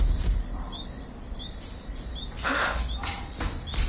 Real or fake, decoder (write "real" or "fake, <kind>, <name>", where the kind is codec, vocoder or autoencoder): real